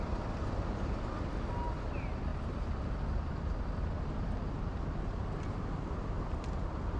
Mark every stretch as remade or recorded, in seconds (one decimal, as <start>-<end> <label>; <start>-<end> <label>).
0.0-7.0 recorded